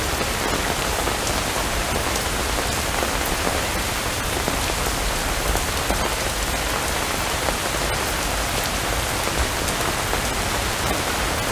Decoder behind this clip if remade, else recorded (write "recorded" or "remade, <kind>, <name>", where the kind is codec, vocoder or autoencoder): recorded